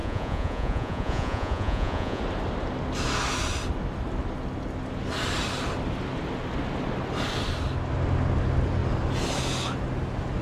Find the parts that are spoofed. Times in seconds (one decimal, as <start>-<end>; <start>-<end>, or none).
0.0-2.2